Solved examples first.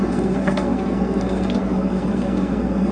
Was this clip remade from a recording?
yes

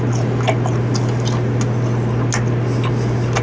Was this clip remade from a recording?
no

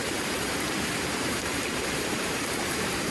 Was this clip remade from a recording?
yes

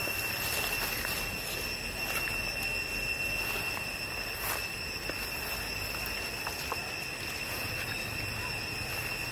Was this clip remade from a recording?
no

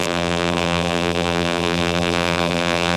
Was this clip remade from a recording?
yes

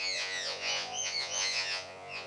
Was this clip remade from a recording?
yes